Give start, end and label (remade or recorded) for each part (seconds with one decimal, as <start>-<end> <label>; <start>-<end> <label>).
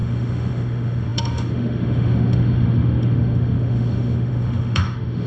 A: 0.0-5.3 remade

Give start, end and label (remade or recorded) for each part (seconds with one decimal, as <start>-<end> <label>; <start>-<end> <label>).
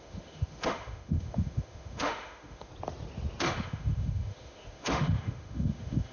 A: 0.0-2.7 remade; 2.7-3.4 recorded; 3.4-6.1 remade